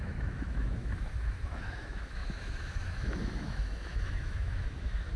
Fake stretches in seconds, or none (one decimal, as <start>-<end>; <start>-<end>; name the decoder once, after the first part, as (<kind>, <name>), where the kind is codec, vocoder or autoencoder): 0.0-5.2 (autoencoder, DAC-VAE)